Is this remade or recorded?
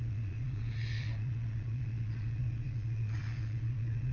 remade